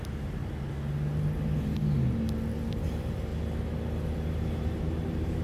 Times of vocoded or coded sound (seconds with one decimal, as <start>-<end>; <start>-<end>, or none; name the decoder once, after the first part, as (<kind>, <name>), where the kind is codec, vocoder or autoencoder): 0.0-0.4 (vocoder, BigVGAN v2); 2.8-3.3; 4.0-5.4